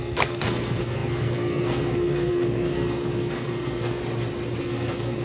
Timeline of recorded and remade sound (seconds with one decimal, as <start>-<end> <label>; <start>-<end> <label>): 0.0-4.0 remade; 4.0-4.6 recorded; 4.6-5.2 remade

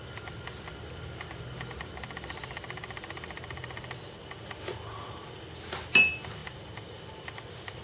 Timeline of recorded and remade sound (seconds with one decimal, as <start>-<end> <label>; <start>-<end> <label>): 0.0-7.8 recorded

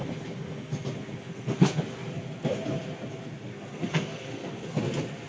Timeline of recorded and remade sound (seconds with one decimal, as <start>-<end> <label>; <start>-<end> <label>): 0.0-1.3 recorded; 1.3-1.8 remade; 1.8-3.5 recorded; 3.5-4.8 remade; 4.8-5.3 recorded